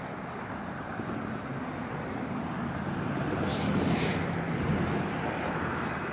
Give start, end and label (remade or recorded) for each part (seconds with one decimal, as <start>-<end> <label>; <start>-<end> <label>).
0.0-3.5 recorded; 3.5-4.1 remade; 4.1-6.1 recorded